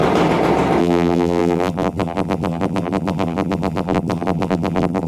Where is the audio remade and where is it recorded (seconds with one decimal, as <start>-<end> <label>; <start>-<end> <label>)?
0.0-0.8 recorded; 0.8-5.1 remade